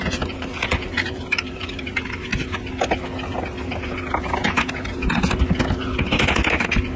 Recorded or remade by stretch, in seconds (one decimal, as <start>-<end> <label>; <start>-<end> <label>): 0.0-1.9 remade; 1.9-7.0 recorded